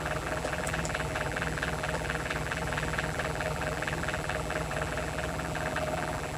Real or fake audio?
fake